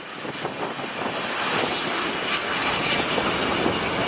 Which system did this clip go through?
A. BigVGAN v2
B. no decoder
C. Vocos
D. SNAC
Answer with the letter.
B